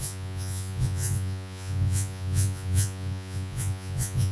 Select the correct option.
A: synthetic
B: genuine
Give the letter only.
A